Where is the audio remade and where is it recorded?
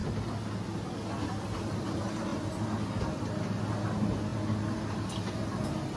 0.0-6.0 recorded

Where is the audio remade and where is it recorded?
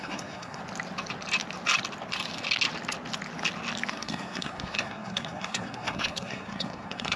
0.0-0.6 remade; 0.6-3.9 recorded; 3.9-7.2 remade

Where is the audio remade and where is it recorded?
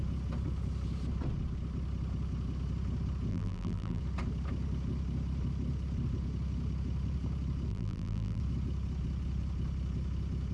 0.0-3.3 recorded; 3.3-4.0 remade; 4.0-7.7 recorded; 7.7-8.4 remade; 8.4-10.5 recorded